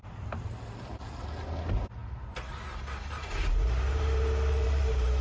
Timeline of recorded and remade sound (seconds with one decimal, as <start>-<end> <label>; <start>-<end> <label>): 0.0-2.0 recorded; 2.0-5.2 remade